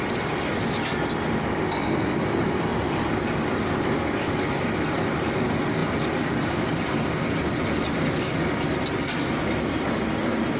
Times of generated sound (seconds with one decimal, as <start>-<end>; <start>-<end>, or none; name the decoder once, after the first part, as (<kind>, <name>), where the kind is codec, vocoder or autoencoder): none